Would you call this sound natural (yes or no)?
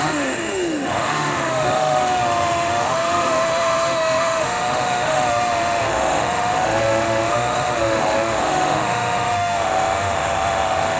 no